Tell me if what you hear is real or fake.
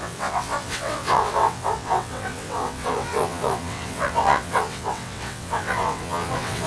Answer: fake